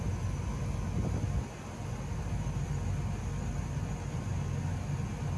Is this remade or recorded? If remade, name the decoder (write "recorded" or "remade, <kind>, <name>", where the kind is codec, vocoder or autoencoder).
recorded